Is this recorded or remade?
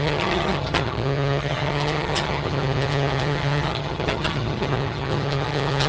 remade